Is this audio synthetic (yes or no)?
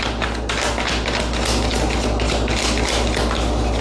no